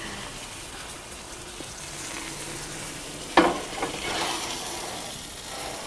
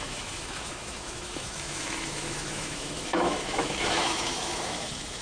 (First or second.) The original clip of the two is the first